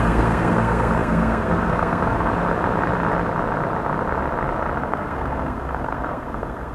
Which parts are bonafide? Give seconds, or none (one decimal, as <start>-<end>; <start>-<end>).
2.3-4.8